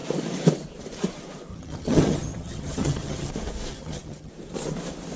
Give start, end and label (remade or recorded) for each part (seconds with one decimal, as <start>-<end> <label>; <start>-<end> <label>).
0.0-1.5 recorded; 1.5-3.3 remade; 3.3-3.7 recorded; 3.7-4.3 remade; 4.3-5.2 recorded